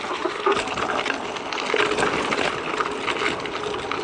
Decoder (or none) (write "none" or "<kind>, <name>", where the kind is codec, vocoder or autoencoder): none